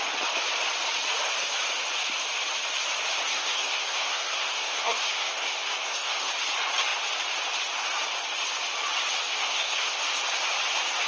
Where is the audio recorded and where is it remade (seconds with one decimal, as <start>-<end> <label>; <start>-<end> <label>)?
0.0-3.3 recorded; 3.3-6.3 remade; 6.3-9.4 recorded; 9.4-10.0 remade; 10.0-11.1 recorded